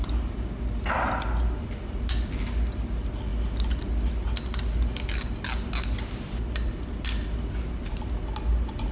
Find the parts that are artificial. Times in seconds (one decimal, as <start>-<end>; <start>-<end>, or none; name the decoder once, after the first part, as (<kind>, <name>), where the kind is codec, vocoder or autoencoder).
none